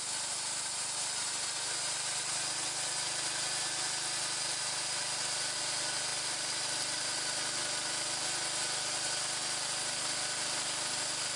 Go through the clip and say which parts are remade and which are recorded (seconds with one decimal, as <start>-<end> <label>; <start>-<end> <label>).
0.0-6.1 recorded; 6.1-7.1 remade; 7.1-11.4 recorded